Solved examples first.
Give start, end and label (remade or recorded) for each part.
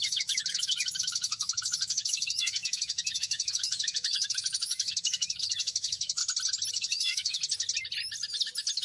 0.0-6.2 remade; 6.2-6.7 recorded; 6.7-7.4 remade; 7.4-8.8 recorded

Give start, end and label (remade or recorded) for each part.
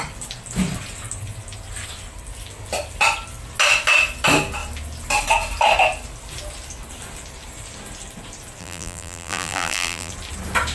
0.0-8.6 recorded; 8.6-10.1 remade; 10.1-10.7 recorded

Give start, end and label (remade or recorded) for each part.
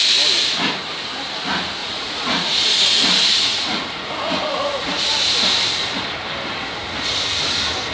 0.0-1.8 recorded; 1.8-5.0 remade; 5.0-7.9 recorded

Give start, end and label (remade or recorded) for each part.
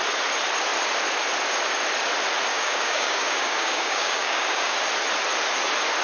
0.0-2.5 recorded; 2.5-4.8 remade; 4.8-6.0 recorded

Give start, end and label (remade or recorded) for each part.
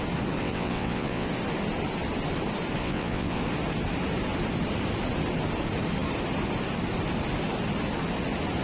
0.0-0.4 recorded; 0.4-1.3 remade; 1.3-2.8 recorded; 2.8-3.4 remade; 3.4-8.6 recorded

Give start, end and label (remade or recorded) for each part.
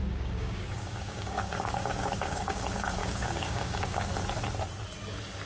0.0-2.6 remade; 2.6-3.0 recorded; 3.0-4.0 remade; 4.0-5.5 recorded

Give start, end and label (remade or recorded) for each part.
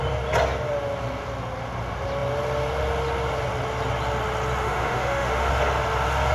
0.0-4.6 recorded; 4.6-5.5 remade; 5.5-6.3 recorded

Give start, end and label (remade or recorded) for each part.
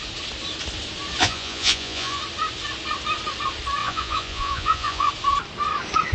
0.0-1.2 recorded; 1.2-2.2 remade; 2.2-3.8 recorded; 3.8-5.1 remade; 5.1-6.1 recorded